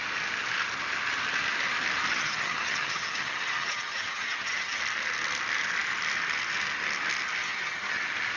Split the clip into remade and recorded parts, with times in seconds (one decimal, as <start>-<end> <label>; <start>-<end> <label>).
0.0-2.1 recorded; 2.1-4.8 remade; 4.8-7.4 recorded; 7.4-8.0 remade; 8.0-8.4 recorded